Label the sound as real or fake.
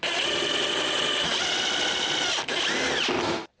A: real